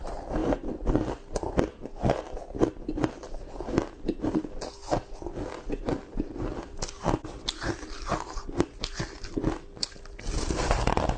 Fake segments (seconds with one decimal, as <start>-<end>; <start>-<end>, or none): none